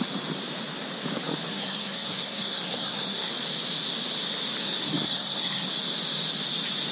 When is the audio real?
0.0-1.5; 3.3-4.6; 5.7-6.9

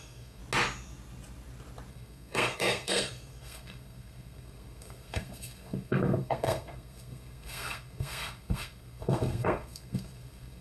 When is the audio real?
0.4-1.9

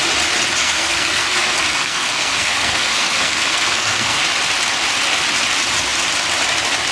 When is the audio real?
0.0-0.6; 4.2-6.9

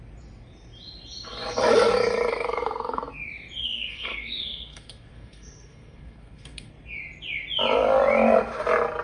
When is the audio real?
0.0-2.3; 3.0-3.6; 6.7-9.0

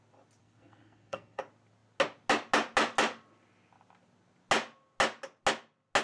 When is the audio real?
0.0-0.4; 1.4-6.0